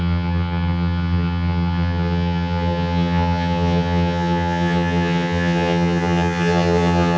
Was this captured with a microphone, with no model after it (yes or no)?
no